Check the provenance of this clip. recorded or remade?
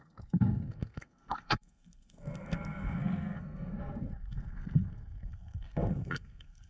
remade